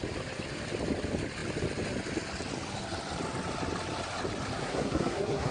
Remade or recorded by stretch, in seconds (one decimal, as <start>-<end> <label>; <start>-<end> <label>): 0.0-4.6 recorded; 4.6-5.5 remade